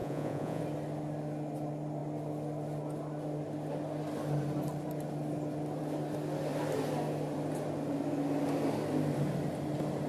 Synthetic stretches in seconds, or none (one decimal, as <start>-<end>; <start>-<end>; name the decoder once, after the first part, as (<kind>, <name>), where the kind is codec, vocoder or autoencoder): 0.0-0.6 (vocoder, Vocos)